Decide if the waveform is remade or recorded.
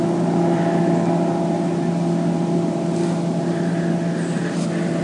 recorded